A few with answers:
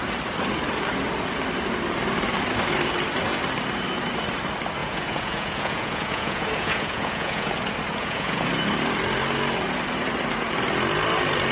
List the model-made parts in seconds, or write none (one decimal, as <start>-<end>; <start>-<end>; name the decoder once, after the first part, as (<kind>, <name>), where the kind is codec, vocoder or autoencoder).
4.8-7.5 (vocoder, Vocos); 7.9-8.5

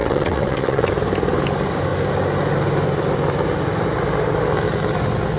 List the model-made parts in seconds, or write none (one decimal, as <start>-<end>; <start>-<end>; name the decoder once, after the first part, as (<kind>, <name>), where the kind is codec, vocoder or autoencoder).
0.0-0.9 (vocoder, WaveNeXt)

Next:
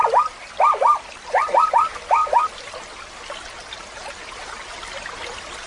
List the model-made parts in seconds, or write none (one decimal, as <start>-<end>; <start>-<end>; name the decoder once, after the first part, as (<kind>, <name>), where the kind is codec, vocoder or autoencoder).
0.0-2.2 (vocoder, BigVGAN v2); 4.3-5.7

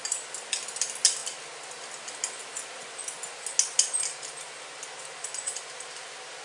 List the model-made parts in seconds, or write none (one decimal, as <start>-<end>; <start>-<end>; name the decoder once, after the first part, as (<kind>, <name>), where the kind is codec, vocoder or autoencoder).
none